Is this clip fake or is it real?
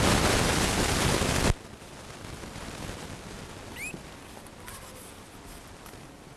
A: real